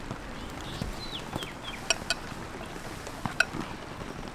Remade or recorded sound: recorded